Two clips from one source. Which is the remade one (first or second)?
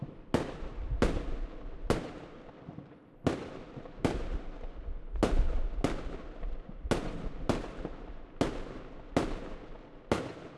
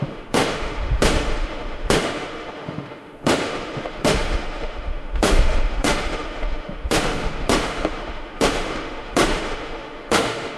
second